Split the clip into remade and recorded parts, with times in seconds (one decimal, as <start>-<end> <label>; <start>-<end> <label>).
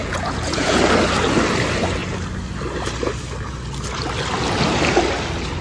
0.0-0.8 remade; 0.8-5.6 recorded